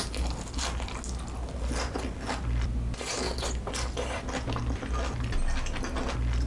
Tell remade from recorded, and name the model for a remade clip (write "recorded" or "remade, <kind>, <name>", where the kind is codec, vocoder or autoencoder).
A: recorded